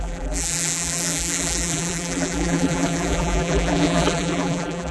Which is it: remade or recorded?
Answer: remade